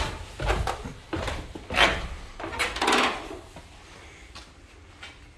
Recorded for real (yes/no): yes